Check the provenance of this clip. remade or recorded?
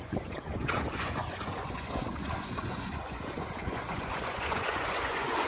remade